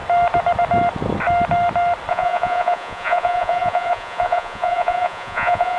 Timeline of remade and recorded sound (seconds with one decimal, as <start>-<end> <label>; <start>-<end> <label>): 0.0-2.1 recorded; 2.1-5.8 remade